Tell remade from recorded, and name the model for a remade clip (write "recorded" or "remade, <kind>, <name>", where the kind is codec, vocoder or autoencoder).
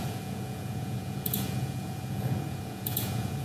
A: remade, vocoder, Vocos